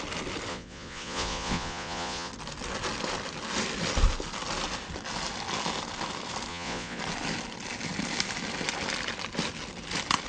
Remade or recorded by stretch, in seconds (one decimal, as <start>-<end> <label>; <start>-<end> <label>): 0.0-0.5 recorded; 0.5-2.3 remade; 2.3-6.5 recorded; 6.5-7.0 remade; 7.0-10.3 recorded